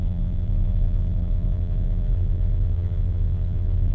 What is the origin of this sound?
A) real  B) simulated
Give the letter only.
B